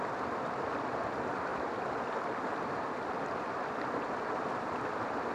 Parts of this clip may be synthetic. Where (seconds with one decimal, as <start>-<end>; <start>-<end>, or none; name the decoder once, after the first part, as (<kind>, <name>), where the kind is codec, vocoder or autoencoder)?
none

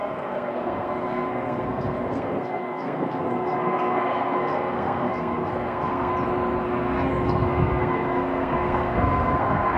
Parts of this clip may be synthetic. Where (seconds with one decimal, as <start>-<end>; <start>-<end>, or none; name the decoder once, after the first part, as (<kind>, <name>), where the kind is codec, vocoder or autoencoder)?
0.0-6.1 (codec, SNAC); 6.6-9.8

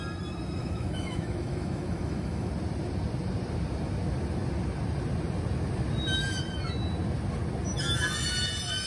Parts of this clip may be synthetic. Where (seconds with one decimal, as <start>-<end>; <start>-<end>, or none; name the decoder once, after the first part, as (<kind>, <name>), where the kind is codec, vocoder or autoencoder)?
0.6-2.5 (autoencoder, DAC-VAE)